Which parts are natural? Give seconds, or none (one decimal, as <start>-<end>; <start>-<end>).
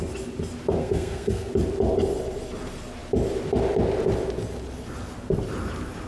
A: 0.0-0.8; 1.5-6.1